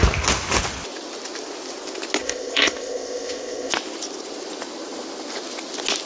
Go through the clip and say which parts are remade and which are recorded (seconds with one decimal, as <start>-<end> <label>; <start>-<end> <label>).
0.0-2.2 recorded; 2.2-3.7 remade; 3.7-6.1 recorded